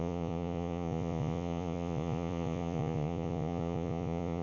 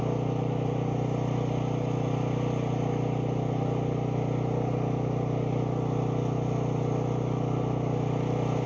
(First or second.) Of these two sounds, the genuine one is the second